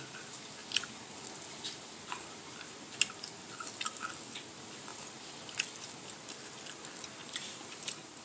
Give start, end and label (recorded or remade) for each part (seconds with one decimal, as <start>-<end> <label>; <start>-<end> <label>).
0.0-4.9 recorded; 4.9-5.6 remade; 5.6-7.2 recorded; 7.2-8.2 remade